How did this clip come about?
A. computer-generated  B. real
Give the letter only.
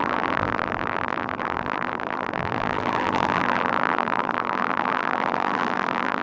A